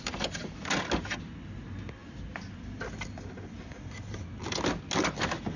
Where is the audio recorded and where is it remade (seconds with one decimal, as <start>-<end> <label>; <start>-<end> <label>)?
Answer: 0.0-5.6 recorded